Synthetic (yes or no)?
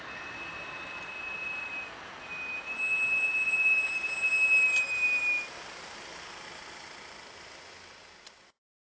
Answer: no